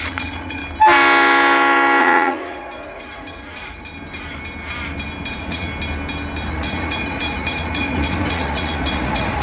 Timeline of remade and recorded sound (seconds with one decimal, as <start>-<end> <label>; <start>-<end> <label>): 0.0-0.6 remade; 0.6-2.0 recorded; 2.0-3.9 remade; 3.9-5.3 recorded; 5.3-5.7 remade; 5.7-6.5 recorded; 6.5-9.4 remade